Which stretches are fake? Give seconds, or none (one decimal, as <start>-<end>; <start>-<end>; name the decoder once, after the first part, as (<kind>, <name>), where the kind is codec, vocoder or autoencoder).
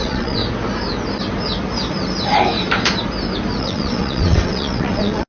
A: 0.0-0.4 (vocoder, WaveNeXt); 3.6-5.3